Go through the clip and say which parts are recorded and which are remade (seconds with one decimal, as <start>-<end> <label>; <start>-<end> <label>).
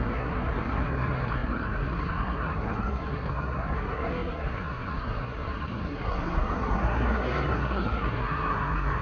0.0-9.0 remade